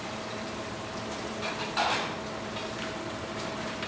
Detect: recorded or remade recorded